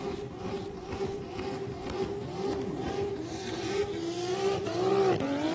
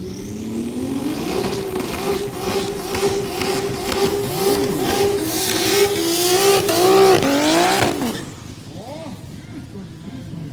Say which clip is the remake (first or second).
first